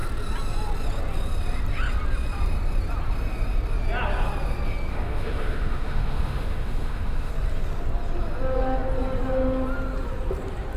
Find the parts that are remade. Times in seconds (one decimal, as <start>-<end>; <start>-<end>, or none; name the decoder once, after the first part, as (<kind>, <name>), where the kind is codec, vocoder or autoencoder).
4.9-7.3 (autoencoder, DAC-VAE)